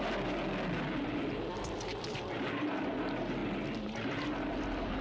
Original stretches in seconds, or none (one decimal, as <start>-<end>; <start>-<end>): 0.0-5.0